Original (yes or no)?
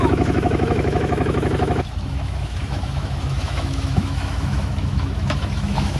no